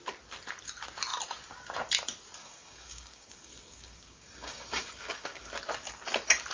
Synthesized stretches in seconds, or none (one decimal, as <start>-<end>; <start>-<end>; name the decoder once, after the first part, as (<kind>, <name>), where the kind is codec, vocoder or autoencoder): 2.4-5.5 (codec, DAC)